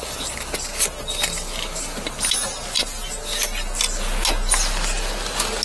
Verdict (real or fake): real